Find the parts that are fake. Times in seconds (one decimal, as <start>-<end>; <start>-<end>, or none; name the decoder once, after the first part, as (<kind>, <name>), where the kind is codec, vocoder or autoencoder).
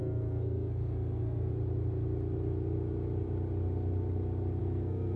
0.0-1.5 (codec, SNAC); 4.6-5.2